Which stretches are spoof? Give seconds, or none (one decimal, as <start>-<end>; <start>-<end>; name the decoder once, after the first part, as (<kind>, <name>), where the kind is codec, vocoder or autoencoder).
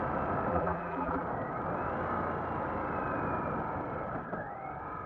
0.5-1.2 (vocoder, BigVGAN v2)